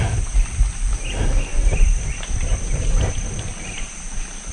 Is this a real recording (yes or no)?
yes